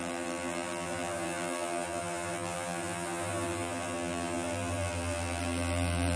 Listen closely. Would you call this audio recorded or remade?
remade